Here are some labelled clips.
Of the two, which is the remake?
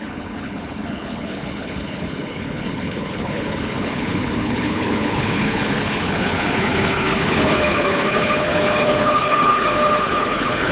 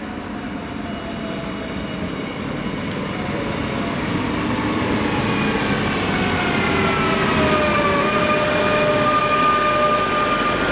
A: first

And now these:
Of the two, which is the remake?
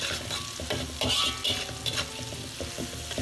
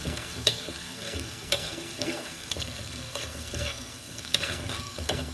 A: second